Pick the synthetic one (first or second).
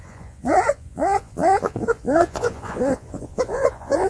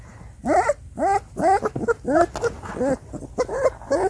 first